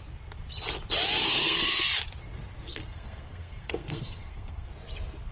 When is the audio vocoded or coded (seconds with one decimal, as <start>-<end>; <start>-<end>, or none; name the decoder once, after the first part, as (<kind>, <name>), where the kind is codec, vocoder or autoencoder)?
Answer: 1.2-1.9 (codec, SNAC); 2.7-4.7